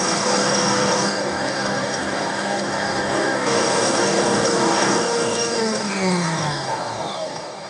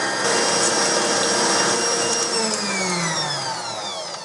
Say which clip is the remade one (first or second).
first